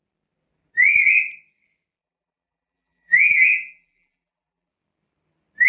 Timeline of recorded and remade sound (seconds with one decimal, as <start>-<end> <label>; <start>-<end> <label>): 0.0-2.0 recorded; 2.0-4.7 remade; 4.7-5.7 recorded